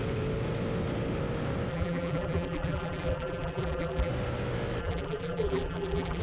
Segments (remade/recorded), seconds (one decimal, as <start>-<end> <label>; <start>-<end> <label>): 0.0-1.7 recorded; 1.7-4.1 remade; 4.1-4.8 recorded; 4.8-6.2 remade